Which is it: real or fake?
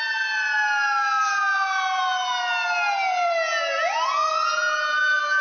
real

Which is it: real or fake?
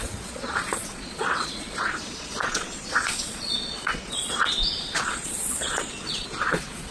fake